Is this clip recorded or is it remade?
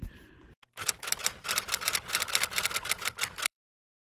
remade